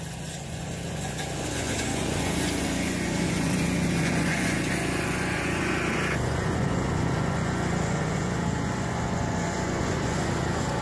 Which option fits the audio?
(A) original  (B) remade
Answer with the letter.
B